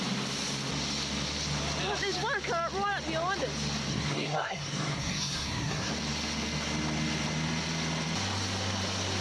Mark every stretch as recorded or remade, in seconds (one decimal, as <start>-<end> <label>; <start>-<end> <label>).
0.0-3.9 recorded; 3.9-5.9 remade; 5.9-9.2 recorded